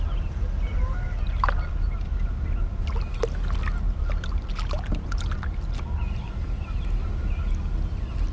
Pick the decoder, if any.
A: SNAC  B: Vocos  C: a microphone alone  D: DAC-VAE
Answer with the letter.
C